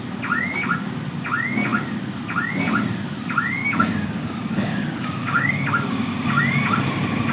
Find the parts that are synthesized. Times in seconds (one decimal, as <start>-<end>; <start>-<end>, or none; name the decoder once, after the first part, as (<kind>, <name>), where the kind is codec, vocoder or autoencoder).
3.6-6.4 (codec, DAC)